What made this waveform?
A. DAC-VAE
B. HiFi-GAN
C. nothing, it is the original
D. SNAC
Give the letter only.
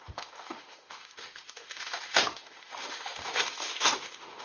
A